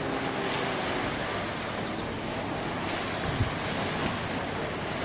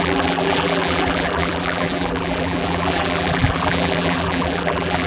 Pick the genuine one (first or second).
first